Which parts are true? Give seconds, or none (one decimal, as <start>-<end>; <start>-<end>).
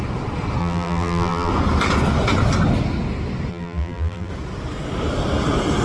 0.0-0.6; 1.5-3.5; 4.3-5.8